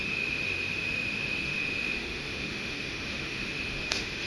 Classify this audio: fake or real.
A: fake